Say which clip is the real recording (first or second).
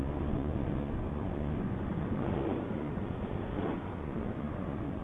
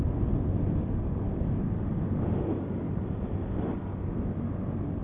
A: second